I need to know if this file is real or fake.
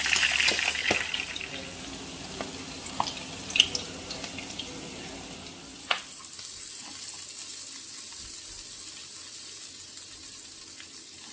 real